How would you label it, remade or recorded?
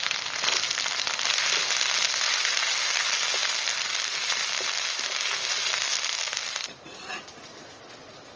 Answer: recorded